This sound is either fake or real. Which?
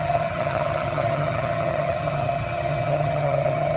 fake